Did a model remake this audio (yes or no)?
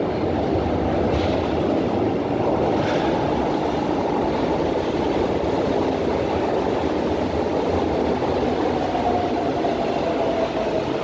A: no